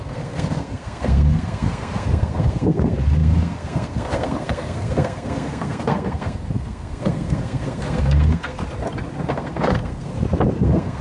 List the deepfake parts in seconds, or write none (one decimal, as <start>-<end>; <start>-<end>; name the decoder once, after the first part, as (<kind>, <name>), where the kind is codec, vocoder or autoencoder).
0.0-8.6 (codec, SNAC); 9.3-10.1; 10.6-11.0